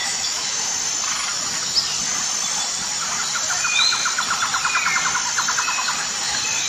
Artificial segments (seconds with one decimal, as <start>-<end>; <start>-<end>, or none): 0.0-0.7